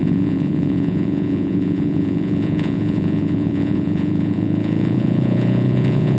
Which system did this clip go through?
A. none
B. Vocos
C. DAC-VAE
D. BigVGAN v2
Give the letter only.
B